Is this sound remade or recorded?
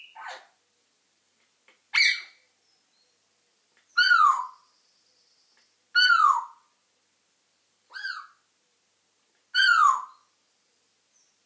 recorded